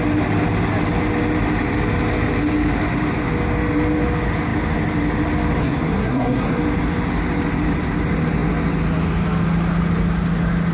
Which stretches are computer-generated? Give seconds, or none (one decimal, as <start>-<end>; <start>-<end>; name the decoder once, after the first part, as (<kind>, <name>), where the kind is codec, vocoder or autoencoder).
5.6-6.6 (codec, SNAC)